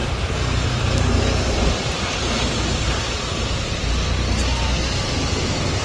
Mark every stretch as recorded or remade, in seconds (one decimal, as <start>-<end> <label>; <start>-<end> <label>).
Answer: 0.0-5.8 recorded